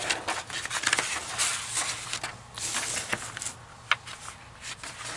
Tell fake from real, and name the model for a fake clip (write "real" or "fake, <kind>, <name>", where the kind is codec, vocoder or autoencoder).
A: real